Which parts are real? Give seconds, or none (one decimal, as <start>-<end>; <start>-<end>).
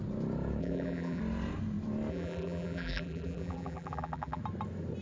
0.0-0.6; 1.2-2.1; 4.4-5.0